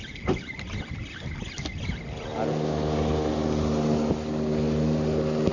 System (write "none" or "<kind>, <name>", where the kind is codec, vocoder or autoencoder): none